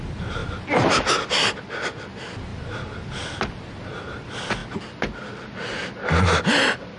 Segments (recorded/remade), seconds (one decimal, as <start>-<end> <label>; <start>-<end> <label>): 0.0-2.5 recorded; 2.5-3.6 remade; 3.6-7.0 recorded